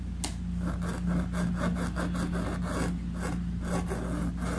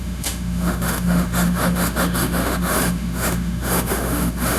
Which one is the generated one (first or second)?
second